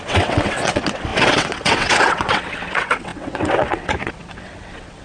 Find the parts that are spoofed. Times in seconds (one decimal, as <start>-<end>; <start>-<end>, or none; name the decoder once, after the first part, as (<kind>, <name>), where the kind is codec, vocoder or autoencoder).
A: 0.0-5.0 (vocoder, WaveNeXt)